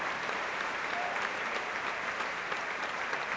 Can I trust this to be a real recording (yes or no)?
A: no